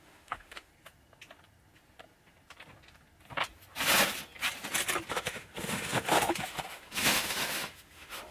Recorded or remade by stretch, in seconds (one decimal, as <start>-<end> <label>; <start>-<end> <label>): 0.0-0.7 remade; 0.7-5.1 recorded; 5.1-8.3 remade